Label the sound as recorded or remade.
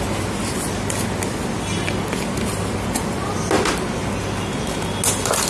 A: recorded